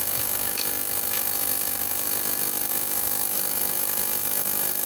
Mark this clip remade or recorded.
remade